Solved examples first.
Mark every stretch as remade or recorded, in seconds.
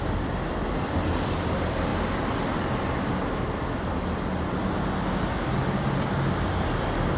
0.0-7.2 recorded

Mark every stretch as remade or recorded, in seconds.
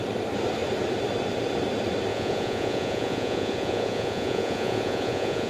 0.0-2.1 recorded; 2.1-5.5 remade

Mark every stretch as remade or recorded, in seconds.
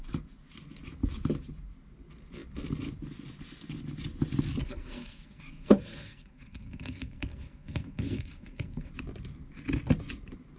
0.0-4.6 recorded; 4.6-8.9 remade; 8.9-10.6 recorded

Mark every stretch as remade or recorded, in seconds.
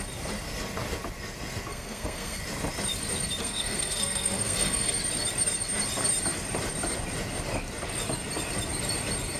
0.0-1.7 recorded; 1.7-2.4 remade; 2.4-3.4 recorded; 3.4-4.9 remade; 4.9-9.4 recorded